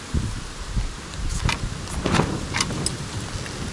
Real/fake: real